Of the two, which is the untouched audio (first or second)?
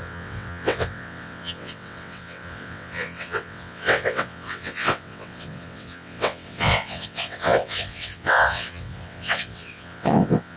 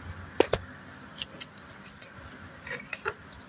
second